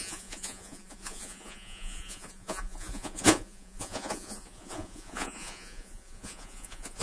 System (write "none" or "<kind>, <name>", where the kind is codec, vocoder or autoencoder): vocoder, Vocos